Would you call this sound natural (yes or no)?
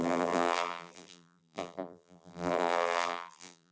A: no